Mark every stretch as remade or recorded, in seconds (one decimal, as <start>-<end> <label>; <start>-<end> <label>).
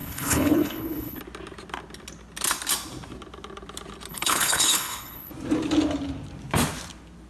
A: 0.0-1.2 remade; 1.2-4.1 recorded; 4.1-5.3 remade; 5.3-7.3 recorded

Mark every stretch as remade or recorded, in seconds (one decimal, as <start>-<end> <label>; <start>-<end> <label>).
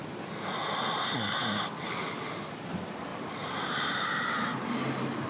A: 0.0-5.3 recorded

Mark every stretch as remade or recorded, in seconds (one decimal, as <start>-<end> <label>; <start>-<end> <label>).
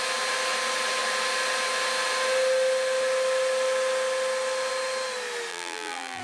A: 0.0-5.5 recorded; 5.5-6.2 remade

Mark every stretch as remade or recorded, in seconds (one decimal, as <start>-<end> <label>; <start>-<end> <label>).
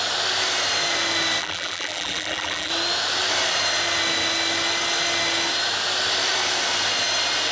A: 0.0-1.4 recorded; 1.4-2.7 remade; 2.7-7.5 recorded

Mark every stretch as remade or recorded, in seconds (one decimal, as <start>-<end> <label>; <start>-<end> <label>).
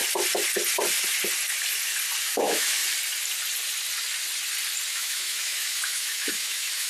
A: 0.0-2.2 recorded; 2.2-2.8 remade; 2.8-4.9 recorded; 4.9-6.9 remade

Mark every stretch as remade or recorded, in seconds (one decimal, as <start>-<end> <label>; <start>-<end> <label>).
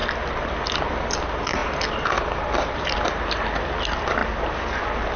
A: 0.0-5.2 recorded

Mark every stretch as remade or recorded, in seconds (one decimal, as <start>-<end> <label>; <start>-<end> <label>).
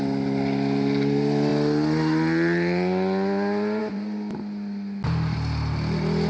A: 0.0-6.3 recorded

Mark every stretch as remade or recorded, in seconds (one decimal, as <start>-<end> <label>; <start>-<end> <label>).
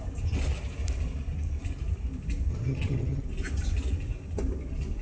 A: 0.0-2.5 recorded; 2.5-3.2 remade; 3.2-5.0 recorded